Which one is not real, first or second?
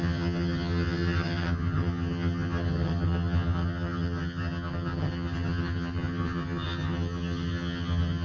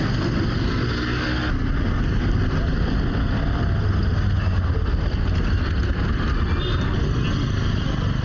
first